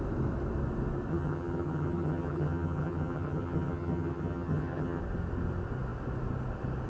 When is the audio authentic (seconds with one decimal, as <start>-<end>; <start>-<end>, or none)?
0.0-1.1; 5.0-6.9